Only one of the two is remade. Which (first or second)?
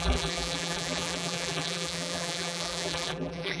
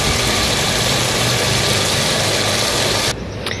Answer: first